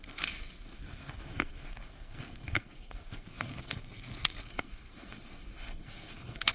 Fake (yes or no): yes